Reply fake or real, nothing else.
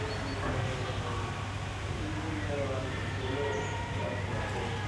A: real